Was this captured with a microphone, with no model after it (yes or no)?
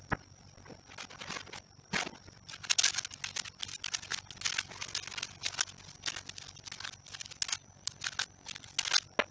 yes